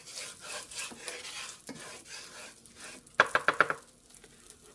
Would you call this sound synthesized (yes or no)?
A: no